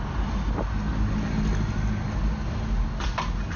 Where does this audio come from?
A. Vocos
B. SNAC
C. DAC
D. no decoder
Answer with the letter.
D